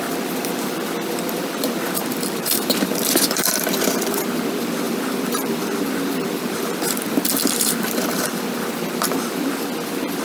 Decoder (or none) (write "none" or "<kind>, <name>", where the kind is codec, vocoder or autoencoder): vocoder, BigVGAN v2